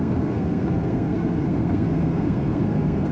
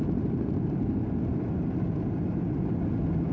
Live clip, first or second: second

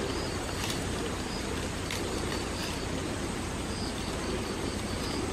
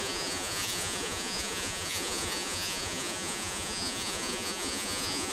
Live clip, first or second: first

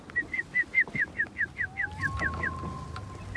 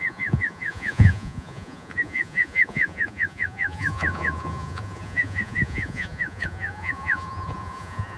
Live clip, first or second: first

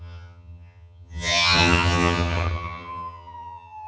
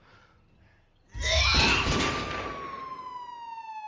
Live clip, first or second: second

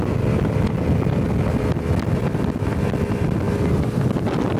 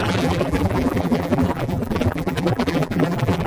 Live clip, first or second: first